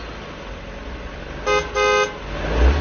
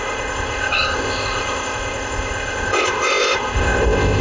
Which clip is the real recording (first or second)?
first